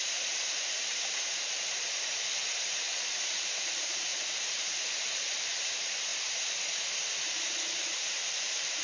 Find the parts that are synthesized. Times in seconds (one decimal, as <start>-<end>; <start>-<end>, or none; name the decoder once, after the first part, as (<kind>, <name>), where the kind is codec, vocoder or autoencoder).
0.0-6.1 (vocoder, BigVGAN v2); 7.2-8.8